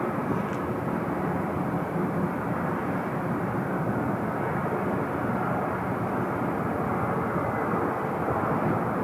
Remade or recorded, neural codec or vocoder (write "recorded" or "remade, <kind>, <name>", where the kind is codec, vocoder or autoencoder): recorded